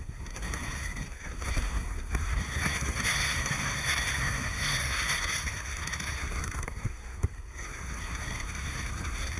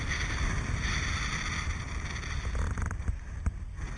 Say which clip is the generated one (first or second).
first